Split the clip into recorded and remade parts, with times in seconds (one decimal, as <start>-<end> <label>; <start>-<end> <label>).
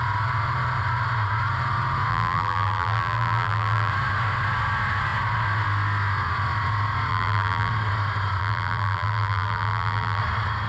0.0-2.1 recorded; 2.1-3.9 remade; 3.9-7.1 recorded; 7.1-7.7 remade; 7.7-8.4 recorded; 8.4-10.2 remade; 10.2-10.7 recorded